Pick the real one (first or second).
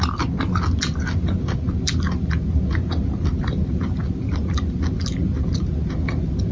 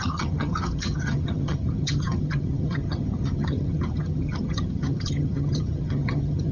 first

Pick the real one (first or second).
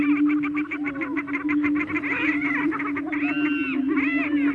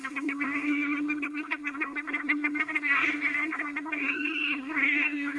first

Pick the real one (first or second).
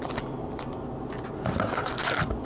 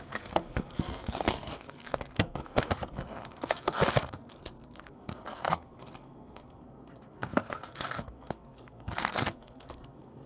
first